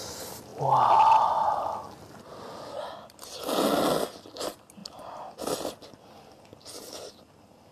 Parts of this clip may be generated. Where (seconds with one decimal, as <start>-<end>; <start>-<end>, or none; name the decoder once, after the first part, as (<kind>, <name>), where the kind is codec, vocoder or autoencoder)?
none